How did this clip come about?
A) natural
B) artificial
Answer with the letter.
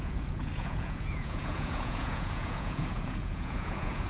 B